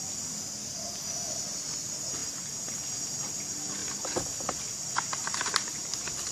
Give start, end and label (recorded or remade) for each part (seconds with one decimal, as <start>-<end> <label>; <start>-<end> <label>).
0.0-6.3 recorded